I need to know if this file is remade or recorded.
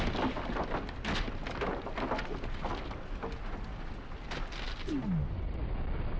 recorded